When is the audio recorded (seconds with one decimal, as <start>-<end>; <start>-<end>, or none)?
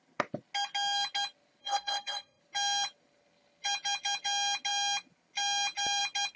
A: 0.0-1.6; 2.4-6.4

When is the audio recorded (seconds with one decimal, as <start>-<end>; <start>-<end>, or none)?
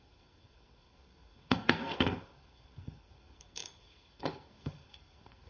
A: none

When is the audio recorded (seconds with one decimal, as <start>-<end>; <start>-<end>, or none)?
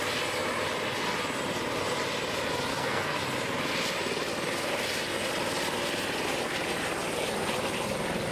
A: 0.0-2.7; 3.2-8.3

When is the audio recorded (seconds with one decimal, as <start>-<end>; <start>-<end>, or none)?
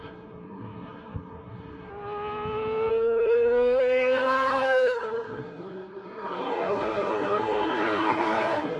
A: 1.9-2.9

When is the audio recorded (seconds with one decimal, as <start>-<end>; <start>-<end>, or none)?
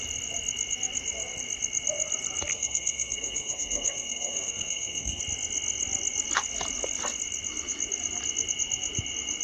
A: 0.0-2.5; 5.2-9.4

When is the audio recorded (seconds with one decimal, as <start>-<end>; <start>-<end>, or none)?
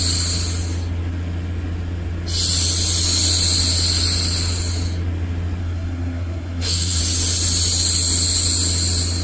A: 0.0-5.6; 7.0-9.2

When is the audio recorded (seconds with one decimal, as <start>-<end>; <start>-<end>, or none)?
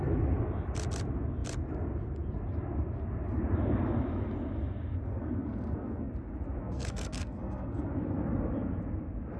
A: 0.0-5.1; 6.1-6.6; 7.9-9.4